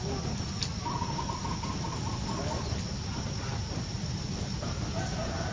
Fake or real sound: real